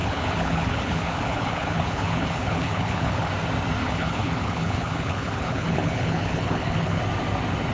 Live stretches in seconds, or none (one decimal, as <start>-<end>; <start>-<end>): 3.3-3.8; 7.0-7.7